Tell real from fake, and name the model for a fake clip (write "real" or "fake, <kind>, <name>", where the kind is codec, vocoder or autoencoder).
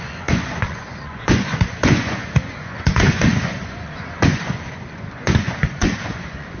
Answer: fake, vocoder, Vocos